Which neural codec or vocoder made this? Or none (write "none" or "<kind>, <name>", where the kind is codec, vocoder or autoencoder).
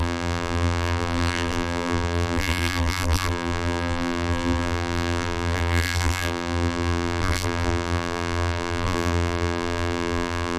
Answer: vocoder, BigVGAN v2